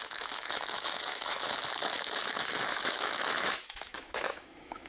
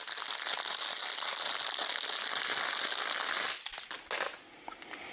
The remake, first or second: first